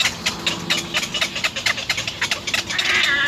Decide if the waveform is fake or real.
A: real